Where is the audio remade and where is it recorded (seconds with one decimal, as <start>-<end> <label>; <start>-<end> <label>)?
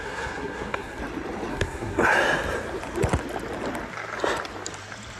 0.0-1.0 remade; 1.0-1.5 recorded; 1.5-2.0 remade; 2.0-5.2 recorded